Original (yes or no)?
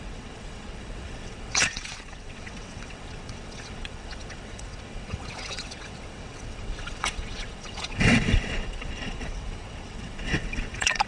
no